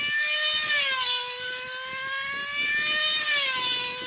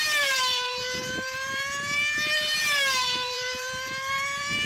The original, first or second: first